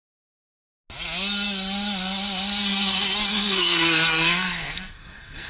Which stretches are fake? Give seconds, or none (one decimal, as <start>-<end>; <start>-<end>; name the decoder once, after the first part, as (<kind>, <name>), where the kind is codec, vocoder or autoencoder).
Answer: 3.3-5.5 (codec, SNAC)